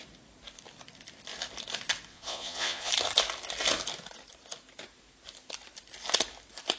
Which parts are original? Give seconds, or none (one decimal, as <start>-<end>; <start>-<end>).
0.0-2.1; 2.9-6.8